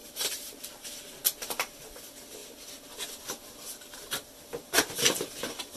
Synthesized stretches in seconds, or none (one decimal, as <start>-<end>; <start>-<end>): 0.0-0.6